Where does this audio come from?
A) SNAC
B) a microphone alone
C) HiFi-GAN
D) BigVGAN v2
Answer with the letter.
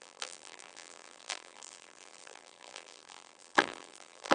D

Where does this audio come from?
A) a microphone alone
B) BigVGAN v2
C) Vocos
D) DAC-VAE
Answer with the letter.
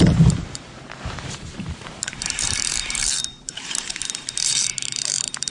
B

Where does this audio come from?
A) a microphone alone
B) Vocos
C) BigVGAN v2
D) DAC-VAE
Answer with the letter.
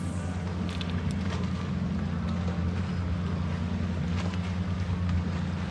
A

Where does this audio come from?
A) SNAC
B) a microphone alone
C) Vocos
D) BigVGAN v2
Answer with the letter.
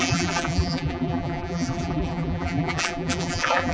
D